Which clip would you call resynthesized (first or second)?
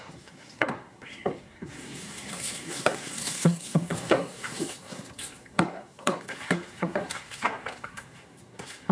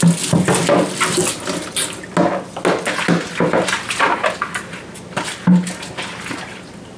first